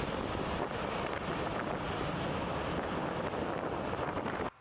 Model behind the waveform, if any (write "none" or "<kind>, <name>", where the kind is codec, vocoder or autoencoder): none